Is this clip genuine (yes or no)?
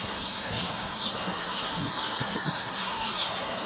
no